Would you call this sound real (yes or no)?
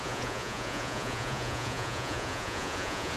no